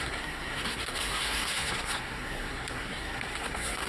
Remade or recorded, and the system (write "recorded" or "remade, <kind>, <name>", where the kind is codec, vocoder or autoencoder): remade, codec, SNAC